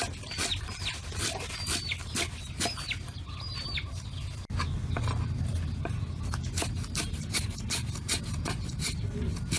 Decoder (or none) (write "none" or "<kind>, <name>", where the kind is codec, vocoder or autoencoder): none